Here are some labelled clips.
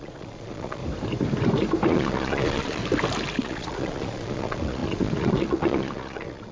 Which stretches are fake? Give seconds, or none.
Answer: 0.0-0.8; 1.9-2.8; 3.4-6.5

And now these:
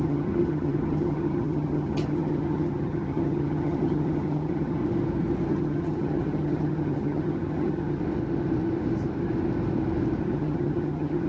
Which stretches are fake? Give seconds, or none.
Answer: 0.0-4.8; 5.5-8.0; 10.2-11.3